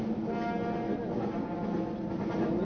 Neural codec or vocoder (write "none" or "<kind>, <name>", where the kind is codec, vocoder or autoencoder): none